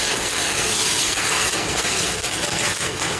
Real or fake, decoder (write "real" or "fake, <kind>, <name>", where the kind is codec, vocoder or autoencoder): fake, codec, SNAC